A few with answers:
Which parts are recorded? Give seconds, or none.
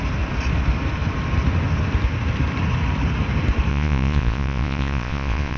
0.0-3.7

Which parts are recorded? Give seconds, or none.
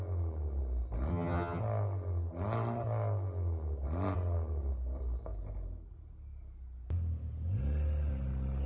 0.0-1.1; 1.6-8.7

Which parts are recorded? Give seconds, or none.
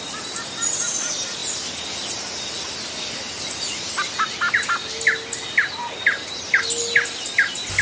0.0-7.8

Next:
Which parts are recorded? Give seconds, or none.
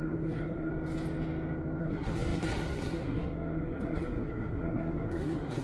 0.7-1.8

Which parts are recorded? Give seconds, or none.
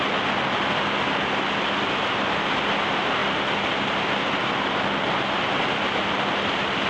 0.0-6.9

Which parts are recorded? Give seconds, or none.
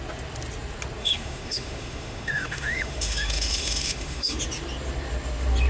0.0-1.0; 4.4-5.7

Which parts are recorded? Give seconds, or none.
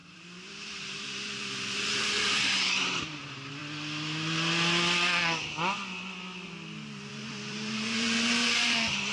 3.6-7.1